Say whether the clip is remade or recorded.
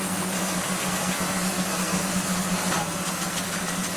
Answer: remade